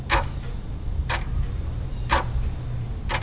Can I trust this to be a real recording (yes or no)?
yes